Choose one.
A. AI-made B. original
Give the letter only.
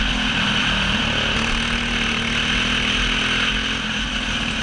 B